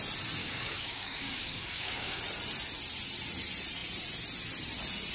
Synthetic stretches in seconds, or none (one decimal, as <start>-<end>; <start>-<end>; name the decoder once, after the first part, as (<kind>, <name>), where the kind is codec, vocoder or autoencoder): 0.4-2.2 (codec, DAC)

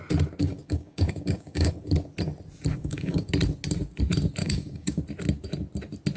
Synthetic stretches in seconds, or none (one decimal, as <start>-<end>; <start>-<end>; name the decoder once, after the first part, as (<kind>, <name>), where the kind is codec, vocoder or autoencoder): 0.4-1.9 (codec, DAC); 2.7-3.3; 4.4-5.0

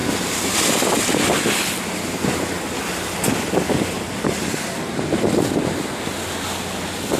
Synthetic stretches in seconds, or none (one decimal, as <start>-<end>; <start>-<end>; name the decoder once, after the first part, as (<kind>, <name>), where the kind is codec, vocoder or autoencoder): none

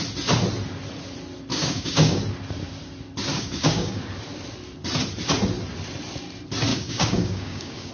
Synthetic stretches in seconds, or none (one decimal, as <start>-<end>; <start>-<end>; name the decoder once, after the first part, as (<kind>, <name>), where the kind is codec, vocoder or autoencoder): 1.5-2.2 (codec, DAC); 3.3-4.0; 6.7-7.9

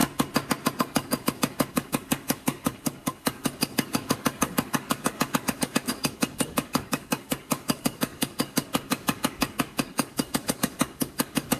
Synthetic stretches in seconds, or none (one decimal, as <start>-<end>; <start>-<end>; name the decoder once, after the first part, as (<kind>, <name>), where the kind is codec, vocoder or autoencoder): 0.8-11.6 (codec, DAC)

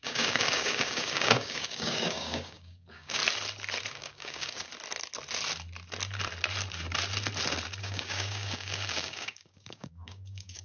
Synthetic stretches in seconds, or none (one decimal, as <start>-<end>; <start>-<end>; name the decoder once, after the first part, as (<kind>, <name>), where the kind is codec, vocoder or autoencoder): 0.0-3.2 (codec, DAC); 3.9-4.7; 7.8-10.6

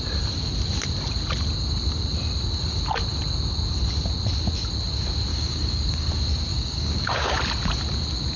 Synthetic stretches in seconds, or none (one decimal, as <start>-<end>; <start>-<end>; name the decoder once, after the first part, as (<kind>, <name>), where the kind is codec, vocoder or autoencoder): 5.3-6.1 (codec, DAC); 6.5-7.4

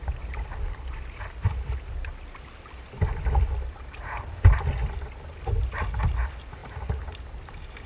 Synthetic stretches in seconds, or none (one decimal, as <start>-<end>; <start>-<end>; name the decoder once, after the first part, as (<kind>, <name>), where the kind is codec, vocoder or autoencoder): none